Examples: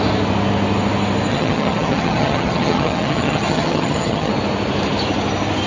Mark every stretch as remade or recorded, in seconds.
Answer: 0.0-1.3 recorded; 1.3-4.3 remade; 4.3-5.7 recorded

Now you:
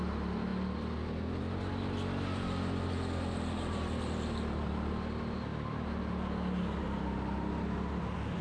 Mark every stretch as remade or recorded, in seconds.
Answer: 0.0-8.4 recorded

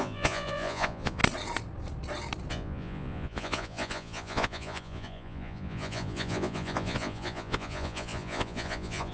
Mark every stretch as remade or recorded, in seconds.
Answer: 0.0-1.2 remade; 1.2-2.5 recorded; 2.5-9.1 remade

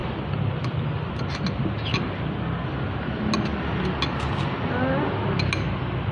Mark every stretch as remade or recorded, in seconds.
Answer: 0.0-6.1 recorded